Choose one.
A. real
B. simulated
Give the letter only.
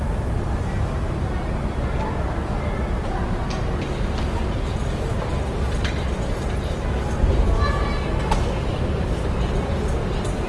A